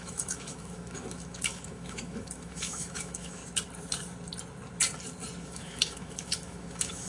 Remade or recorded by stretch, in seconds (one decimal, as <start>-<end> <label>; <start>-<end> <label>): 0.0-3.4 remade; 3.4-5.4 recorded; 5.4-7.1 remade